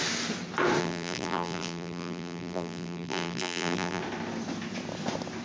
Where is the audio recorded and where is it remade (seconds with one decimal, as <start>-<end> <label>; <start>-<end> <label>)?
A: 0.0-0.8 recorded; 0.8-4.0 remade; 4.0-5.4 recorded